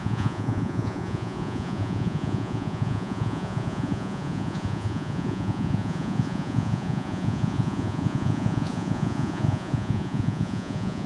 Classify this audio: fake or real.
fake